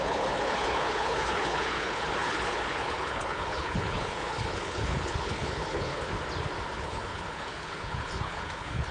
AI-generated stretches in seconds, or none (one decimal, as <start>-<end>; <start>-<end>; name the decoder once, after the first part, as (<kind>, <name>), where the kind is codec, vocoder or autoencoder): 0.0-6.1 (codec, HILCodec); 6.7-8.9